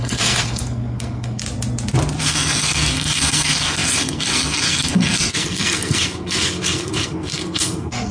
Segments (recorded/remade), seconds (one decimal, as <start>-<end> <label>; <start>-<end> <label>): 0.0-1.4 remade; 1.4-2.2 recorded; 2.2-8.1 remade